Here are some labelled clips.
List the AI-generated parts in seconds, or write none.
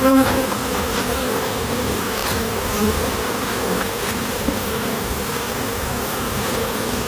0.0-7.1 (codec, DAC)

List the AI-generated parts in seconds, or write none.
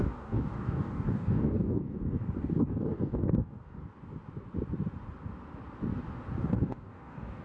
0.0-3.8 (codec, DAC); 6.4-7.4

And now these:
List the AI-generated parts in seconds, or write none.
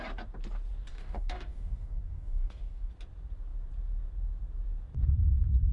0.9-2.9 (codec, DAC)